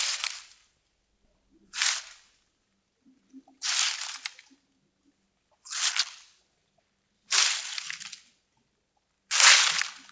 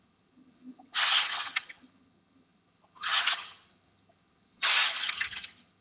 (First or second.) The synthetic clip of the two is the second